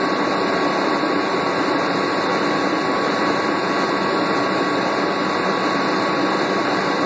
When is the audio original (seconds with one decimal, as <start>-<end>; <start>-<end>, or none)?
0.0-7.1